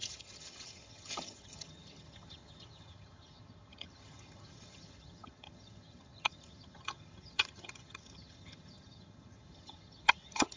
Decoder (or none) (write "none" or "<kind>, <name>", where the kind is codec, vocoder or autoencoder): vocoder, HiFi-GAN